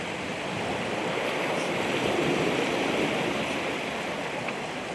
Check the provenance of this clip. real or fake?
real